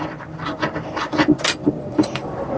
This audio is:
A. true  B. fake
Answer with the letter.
B